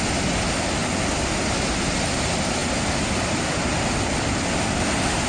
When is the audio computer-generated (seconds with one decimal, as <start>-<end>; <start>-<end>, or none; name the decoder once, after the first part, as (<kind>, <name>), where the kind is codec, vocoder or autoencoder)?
none